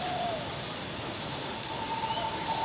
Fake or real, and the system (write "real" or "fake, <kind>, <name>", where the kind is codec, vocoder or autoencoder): real